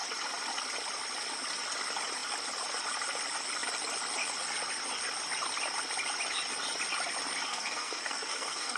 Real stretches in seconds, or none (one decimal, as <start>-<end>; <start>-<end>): 0.0-7.5